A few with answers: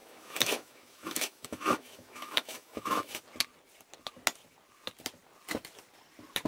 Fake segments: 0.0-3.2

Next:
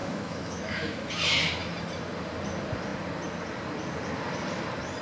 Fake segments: 0.0-1.1

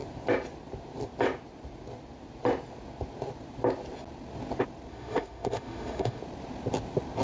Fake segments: 4.9-6.2

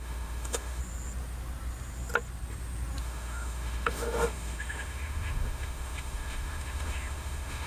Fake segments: 0.0-0.8; 3.0-7.7

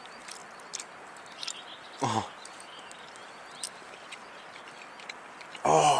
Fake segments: none

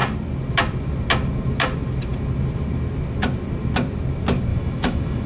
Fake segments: 4.5-5.3

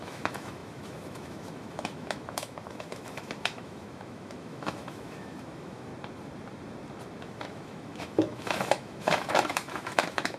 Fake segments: 0.0-5.9; 7.2-10.4